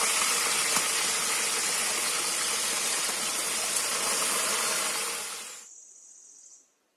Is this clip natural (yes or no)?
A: yes